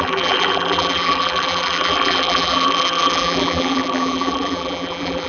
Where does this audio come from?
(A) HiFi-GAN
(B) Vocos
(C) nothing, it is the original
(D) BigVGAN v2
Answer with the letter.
D